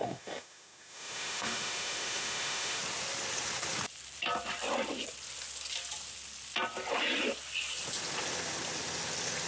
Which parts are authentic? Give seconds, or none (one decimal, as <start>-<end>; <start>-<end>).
2.8-9.5